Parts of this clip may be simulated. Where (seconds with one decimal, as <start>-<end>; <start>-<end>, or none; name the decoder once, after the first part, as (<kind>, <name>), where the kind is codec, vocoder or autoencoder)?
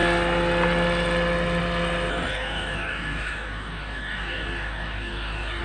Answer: 2.1-5.6 (codec, DAC)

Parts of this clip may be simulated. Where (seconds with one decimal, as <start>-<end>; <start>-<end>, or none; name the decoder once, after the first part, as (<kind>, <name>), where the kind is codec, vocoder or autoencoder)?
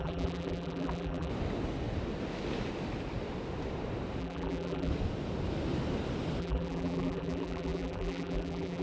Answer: 0.0-1.3 (vocoder, BigVGAN v2); 4.2-4.9; 6.4-8.8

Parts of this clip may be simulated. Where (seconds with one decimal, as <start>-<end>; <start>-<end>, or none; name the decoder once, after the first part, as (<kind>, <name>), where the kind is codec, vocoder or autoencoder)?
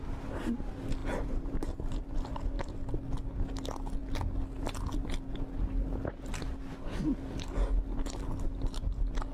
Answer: 1.0-2.6 (vocoder, BigVGAN v2)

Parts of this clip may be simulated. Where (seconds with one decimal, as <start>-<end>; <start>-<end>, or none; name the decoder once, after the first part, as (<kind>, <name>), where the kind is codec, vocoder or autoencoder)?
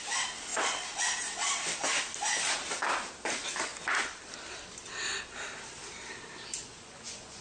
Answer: 6.6-7.4 (vocoder, Vocos)